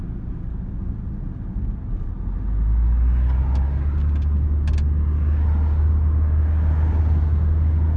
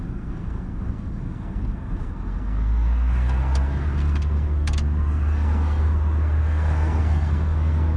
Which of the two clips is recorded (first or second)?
first